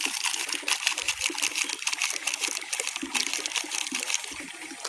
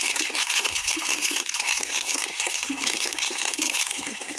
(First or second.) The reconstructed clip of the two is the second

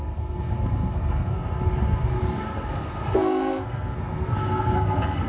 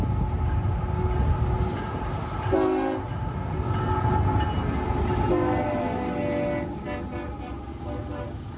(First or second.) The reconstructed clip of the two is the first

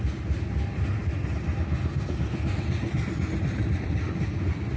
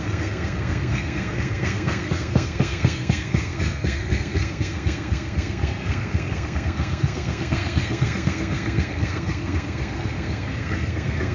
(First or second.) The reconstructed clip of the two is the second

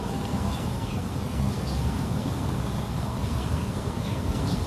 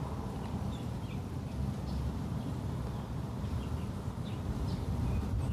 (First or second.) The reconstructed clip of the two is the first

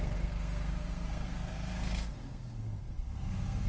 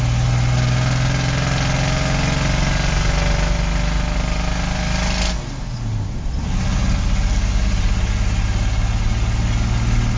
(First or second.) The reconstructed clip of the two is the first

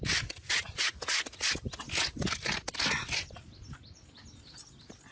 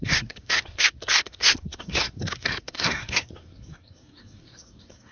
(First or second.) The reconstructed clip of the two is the second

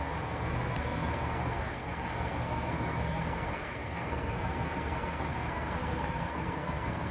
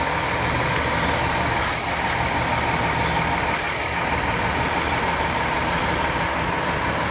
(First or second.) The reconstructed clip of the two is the first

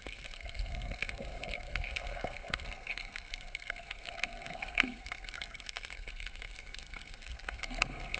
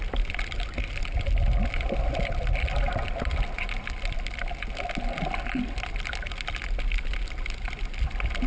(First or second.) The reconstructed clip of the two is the first